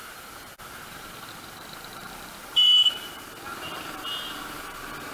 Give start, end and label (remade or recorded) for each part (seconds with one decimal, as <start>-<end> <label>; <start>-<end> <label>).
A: 0.0-1.3 remade; 1.3-1.9 recorded; 1.9-3.1 remade; 3.1-5.1 recorded